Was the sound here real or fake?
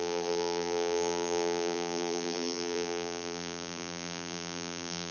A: fake